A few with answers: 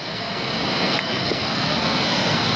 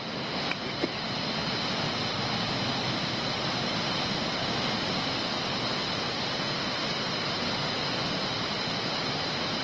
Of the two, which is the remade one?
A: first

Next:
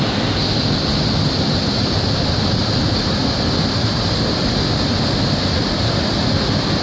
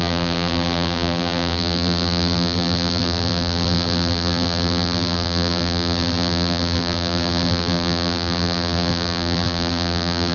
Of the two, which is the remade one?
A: second